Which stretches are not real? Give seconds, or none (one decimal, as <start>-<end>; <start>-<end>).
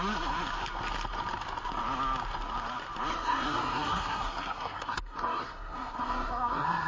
3.1-6.9